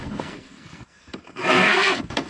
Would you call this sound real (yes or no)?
no